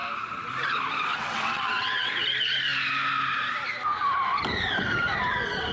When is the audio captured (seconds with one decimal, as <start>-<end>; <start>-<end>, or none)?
0.0-1.1; 2.1-5.7